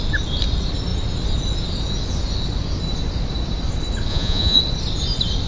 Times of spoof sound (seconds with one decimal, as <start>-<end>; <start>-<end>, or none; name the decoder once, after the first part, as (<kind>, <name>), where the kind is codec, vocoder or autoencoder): 4.1-4.6 (vocoder, Vocos)